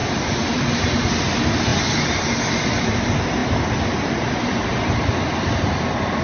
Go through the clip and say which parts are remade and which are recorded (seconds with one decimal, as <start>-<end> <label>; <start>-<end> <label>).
0.0-0.8 remade; 0.8-3.4 recorded; 3.4-5.6 remade; 5.6-6.2 recorded

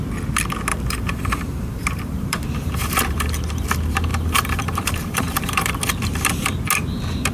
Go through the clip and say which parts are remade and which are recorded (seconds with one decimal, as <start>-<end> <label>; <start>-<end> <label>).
0.0-0.7 recorded; 0.7-3.3 remade; 3.3-4.1 recorded; 4.1-5.7 remade; 5.7-7.3 recorded

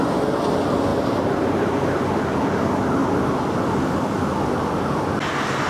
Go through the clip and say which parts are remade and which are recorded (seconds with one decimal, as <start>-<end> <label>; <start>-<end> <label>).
0.0-0.9 recorded; 0.9-1.7 remade; 1.7-5.7 recorded

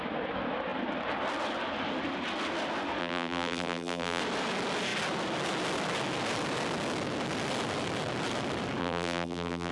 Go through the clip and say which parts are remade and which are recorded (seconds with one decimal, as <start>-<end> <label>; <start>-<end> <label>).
0.0-3.0 recorded; 3.0-4.2 remade; 4.2-8.8 recorded; 8.8-9.7 remade